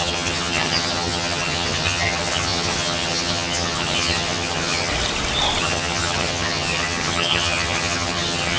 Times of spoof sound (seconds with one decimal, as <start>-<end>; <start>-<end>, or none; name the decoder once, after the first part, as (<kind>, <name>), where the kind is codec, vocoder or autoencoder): 0.0-4.9 (vocoder, HiFi-GAN); 5.6-8.6